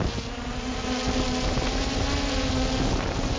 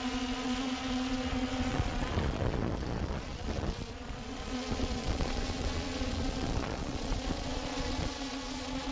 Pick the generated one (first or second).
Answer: second